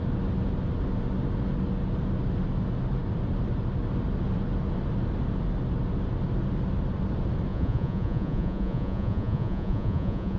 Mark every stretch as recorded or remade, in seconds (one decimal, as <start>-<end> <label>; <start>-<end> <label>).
0.0-7.5 recorded; 7.5-10.4 remade